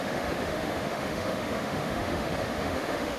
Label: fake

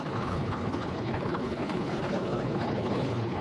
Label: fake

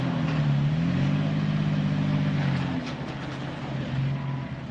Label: real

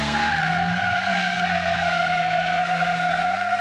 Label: fake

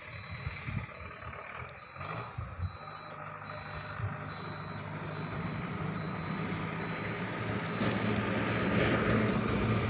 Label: real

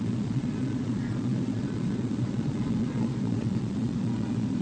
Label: fake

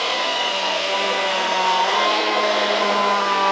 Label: fake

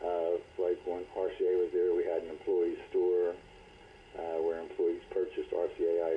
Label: real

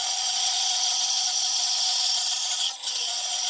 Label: fake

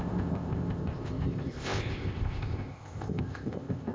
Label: fake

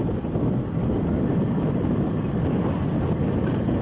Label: real